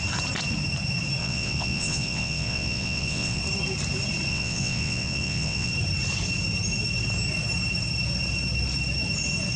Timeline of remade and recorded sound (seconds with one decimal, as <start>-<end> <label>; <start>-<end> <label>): 0.0-1.2 recorded; 1.2-3.4 remade; 3.4-4.3 recorded; 4.3-5.7 remade; 5.7-9.6 recorded